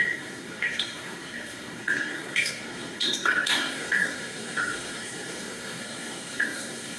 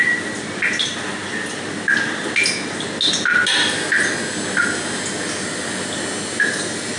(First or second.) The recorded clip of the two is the second